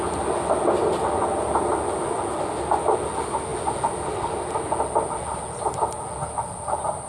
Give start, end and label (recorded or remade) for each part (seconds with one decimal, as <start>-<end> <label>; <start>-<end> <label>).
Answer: 0.0-7.1 recorded